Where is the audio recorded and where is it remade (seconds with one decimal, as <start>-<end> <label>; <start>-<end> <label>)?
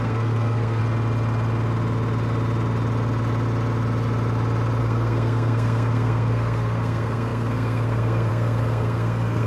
0.0-0.8 remade; 0.8-4.8 recorded; 4.8-9.5 remade